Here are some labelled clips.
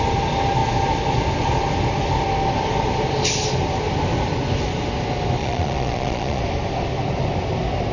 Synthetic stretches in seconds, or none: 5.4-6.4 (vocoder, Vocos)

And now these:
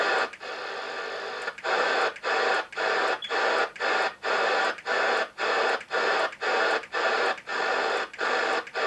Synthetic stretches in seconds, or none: none

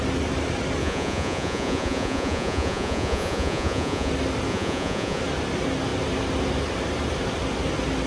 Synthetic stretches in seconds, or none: 0.8-4.1 (vocoder, Vocos); 4.5-5.2

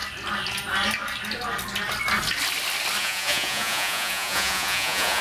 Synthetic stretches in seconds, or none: 3.0-5.2 (vocoder, Vocos)